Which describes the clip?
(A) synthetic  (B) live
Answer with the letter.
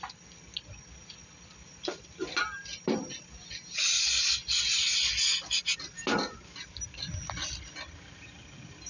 B